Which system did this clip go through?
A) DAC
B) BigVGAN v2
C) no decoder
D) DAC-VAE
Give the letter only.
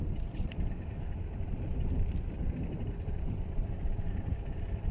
B